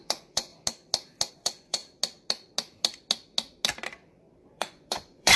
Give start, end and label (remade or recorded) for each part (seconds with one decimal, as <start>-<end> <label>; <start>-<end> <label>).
0.0-0.5 remade; 0.5-1.3 recorded; 1.3-1.8 remade; 1.8-4.5 recorded; 4.5-5.4 remade